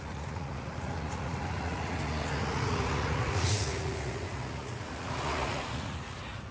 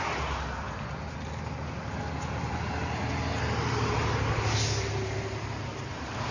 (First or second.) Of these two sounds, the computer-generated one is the first